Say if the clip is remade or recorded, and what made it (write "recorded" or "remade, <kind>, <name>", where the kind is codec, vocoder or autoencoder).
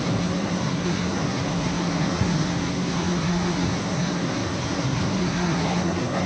remade, codec, SNAC